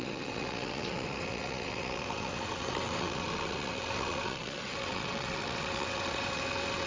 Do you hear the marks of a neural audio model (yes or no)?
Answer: yes